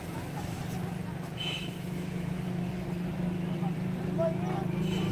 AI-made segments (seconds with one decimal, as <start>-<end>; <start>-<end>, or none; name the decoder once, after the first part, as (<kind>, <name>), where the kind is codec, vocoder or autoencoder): 0.0-0.6 (autoencoder, DAC-VAE); 1.4-2.7